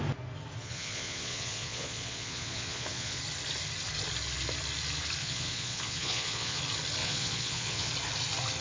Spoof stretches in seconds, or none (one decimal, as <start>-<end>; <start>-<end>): 0.6-3.2; 5.2-6.6; 7.0-7.9